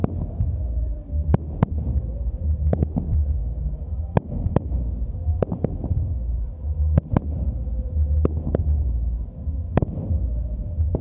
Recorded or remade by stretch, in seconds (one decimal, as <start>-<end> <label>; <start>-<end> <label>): 0.0-3.4 recorded; 3.4-4.8 remade; 4.8-11.0 recorded